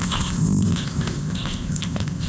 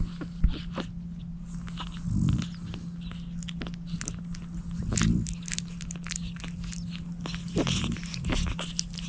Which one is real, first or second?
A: second